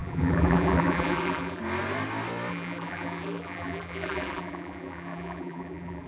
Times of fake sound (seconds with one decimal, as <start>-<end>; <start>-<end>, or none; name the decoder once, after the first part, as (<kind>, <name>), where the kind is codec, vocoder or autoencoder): 0.0-1.6 (vocoder, BigVGAN v2); 2.5-6.1